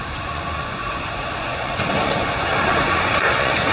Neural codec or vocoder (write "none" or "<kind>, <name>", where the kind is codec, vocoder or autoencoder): vocoder, Vocos